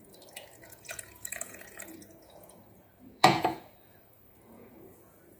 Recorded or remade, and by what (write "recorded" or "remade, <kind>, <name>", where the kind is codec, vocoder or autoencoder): remade, vocoder, Vocos